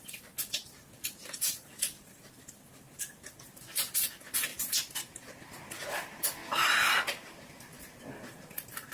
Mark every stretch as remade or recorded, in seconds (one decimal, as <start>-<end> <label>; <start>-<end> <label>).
0.0-1.2 recorded; 1.2-2.2 remade; 2.2-8.9 recorded